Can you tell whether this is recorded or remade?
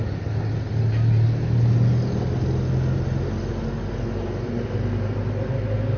recorded